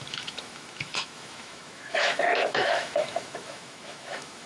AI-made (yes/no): yes